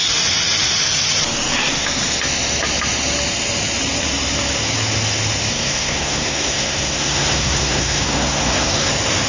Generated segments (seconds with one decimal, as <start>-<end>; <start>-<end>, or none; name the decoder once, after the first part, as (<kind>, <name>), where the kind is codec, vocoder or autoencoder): 5.5-8.9 (codec, SNAC)

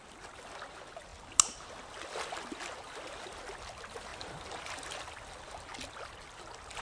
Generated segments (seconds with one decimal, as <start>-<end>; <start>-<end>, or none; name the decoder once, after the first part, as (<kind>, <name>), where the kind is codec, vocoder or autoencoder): none

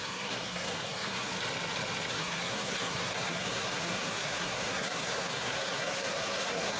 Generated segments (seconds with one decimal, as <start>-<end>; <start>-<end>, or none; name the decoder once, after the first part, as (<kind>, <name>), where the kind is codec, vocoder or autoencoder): 0.0-1.3 (codec, SNAC); 2.1-6.8

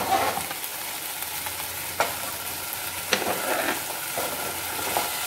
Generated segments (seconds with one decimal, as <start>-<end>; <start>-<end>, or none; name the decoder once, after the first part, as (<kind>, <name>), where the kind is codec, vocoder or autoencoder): none

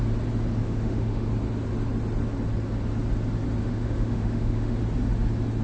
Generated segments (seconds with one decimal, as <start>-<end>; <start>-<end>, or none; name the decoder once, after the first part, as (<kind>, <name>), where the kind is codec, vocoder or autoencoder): 0.6-1.3 (autoencoder, DAC-VAE); 3.6-4.8